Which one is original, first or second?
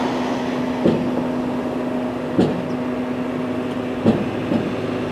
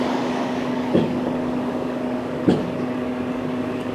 first